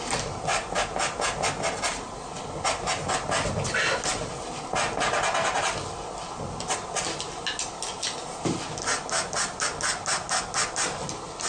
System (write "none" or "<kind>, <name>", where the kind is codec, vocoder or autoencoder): none